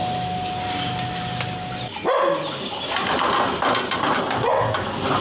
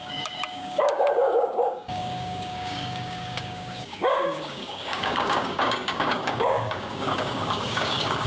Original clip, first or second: first